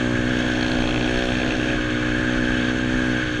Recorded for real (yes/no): yes